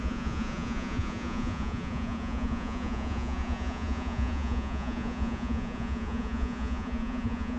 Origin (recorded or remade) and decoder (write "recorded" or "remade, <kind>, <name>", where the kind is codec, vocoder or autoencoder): remade, vocoder, Vocos